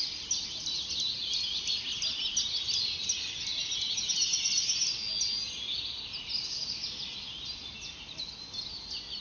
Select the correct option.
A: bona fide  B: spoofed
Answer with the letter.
A